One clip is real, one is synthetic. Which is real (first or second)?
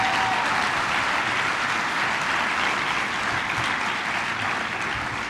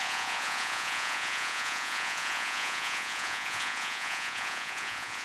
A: first